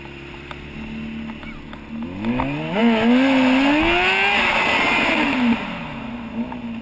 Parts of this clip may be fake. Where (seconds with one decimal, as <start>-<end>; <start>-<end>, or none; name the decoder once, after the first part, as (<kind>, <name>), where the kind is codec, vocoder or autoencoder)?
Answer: none